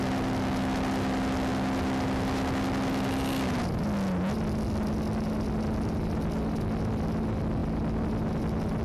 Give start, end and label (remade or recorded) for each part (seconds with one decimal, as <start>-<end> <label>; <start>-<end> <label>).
0.0-8.8 recorded